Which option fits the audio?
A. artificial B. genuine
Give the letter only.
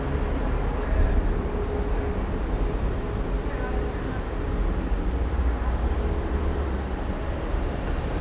B